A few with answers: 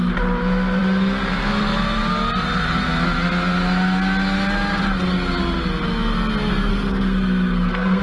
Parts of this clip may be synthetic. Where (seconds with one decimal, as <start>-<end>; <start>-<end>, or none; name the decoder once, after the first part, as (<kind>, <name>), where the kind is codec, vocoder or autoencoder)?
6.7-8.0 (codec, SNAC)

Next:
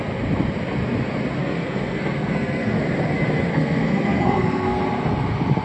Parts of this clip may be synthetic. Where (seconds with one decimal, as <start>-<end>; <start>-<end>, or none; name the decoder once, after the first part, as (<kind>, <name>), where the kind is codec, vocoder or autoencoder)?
1.4-2.8 (codec, SNAC); 3.5-4.8

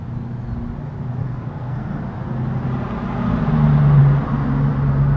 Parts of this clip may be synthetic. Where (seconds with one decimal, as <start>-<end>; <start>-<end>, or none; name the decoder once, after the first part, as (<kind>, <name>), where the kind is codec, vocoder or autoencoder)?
1.2-2.0 (codec, SNAC)